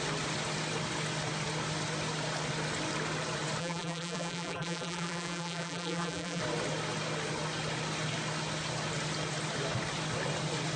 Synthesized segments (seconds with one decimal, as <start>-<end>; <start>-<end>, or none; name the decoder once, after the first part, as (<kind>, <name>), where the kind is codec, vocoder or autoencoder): 3.6-6.4 (vocoder, BigVGAN v2)

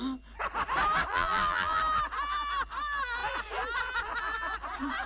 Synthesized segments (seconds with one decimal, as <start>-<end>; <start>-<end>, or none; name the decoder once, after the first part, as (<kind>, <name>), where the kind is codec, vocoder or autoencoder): 1.1-1.8 (vocoder, BigVGAN v2)

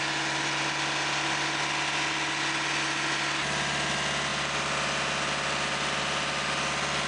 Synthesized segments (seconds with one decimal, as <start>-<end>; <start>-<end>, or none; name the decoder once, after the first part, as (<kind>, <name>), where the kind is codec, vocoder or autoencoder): none

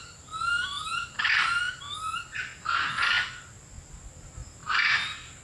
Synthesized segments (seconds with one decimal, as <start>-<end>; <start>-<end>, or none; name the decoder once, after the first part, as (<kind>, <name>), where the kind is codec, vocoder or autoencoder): none

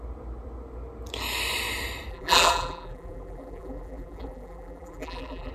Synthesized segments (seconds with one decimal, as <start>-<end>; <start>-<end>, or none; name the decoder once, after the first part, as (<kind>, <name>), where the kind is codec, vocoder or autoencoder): 2.1-5.5 (vocoder, BigVGAN v2)